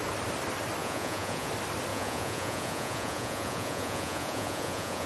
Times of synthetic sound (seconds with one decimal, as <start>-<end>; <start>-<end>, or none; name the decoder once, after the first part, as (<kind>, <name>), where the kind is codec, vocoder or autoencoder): 0.8-1.5 (vocoder, Vocos); 1.9-5.1